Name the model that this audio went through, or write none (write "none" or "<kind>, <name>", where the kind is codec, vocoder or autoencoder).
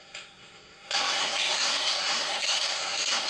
codec, SNAC